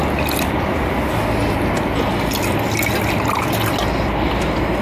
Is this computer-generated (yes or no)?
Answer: no